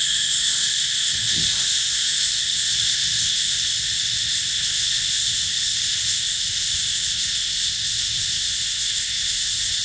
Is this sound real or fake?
fake